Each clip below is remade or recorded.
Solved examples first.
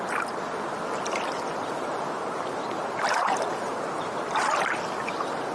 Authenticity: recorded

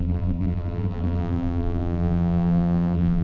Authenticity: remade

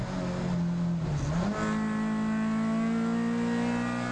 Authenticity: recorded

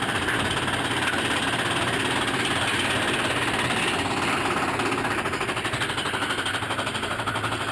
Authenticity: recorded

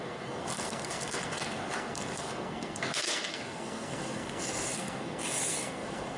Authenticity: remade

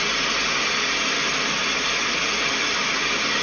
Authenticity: recorded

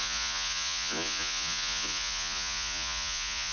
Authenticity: remade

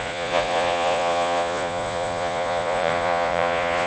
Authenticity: remade